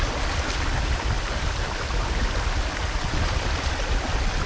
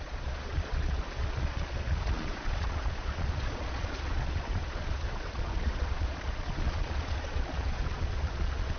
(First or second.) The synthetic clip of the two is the second